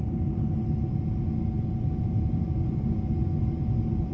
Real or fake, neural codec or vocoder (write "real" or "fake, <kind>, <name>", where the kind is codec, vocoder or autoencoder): real